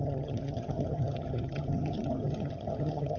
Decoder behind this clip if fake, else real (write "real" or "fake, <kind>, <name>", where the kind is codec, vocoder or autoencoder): fake, vocoder, HiFi-GAN